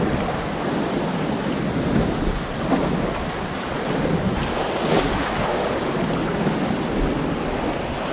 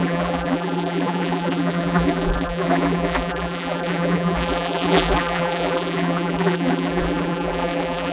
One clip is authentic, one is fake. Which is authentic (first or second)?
first